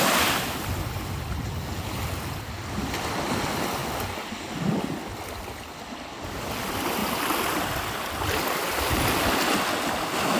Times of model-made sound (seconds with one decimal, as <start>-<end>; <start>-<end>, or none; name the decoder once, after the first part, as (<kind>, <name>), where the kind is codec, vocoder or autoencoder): 3.8-4.7 (vocoder, BigVGAN v2)